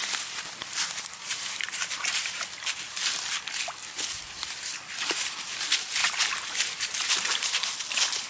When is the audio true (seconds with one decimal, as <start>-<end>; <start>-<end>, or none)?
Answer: 0.0-0.6; 3.2-6.0; 7.5-8.3